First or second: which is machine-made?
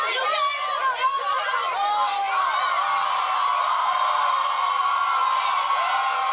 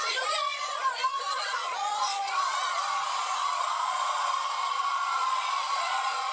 second